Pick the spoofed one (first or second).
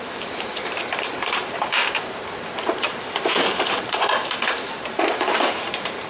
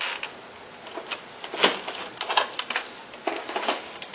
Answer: first